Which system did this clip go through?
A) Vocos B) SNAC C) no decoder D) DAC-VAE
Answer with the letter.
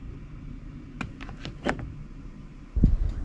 C